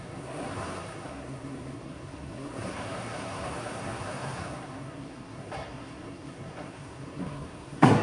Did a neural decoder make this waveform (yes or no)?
yes